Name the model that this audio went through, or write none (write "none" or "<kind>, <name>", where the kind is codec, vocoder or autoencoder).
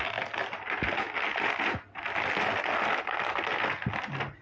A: none